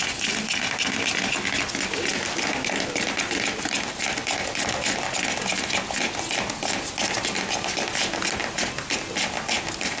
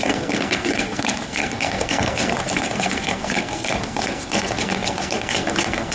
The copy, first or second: second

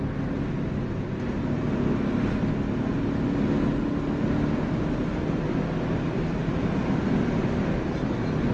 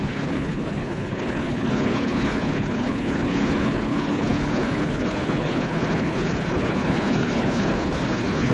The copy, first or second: second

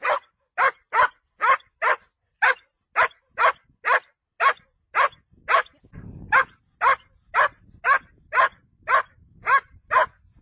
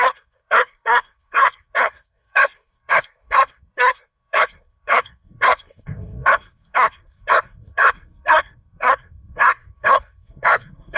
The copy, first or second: second